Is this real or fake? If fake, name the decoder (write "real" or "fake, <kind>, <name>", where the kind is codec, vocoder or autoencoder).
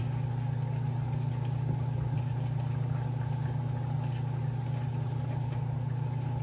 real